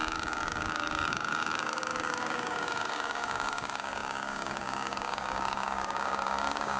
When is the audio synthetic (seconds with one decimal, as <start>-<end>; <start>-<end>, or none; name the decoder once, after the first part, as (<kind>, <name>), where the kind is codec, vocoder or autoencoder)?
0.0-6.8 (codec, DAC)